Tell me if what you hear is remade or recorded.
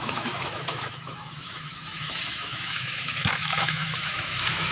remade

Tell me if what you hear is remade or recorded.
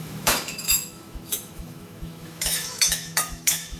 remade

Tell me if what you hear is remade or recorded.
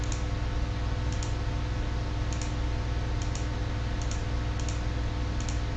recorded